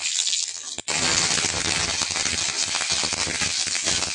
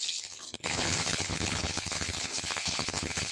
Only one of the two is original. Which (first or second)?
first